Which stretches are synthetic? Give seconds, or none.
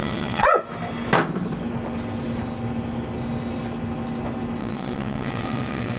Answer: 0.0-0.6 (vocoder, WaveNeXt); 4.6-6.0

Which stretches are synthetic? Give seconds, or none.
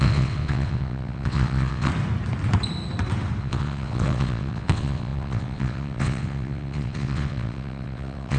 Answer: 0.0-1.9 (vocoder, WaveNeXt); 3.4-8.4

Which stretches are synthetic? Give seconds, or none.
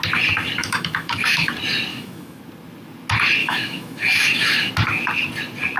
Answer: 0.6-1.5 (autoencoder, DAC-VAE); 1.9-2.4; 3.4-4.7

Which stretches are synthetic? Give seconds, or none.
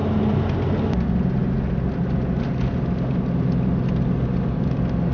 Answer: none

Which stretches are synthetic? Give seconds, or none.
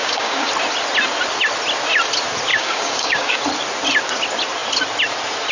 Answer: 0.0-0.5 (codec, DAC); 2.5-3.4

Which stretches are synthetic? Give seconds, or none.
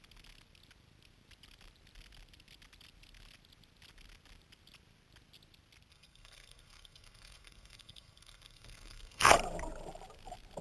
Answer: 5.9-9.3 (codec, SNAC)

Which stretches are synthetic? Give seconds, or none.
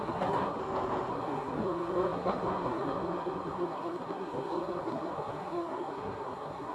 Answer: 0.0-0.6 (codec, SNAC); 1.1-6.7